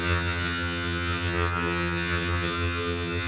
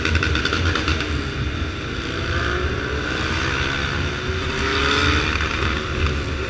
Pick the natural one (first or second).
second